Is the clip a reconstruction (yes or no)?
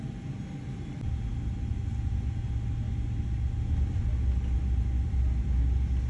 no